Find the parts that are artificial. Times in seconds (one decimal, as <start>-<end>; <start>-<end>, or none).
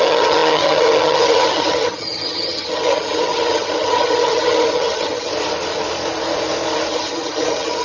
0.0-5.3; 6.9-7.8